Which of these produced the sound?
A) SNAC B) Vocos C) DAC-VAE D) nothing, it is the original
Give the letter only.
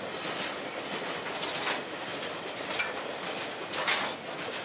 D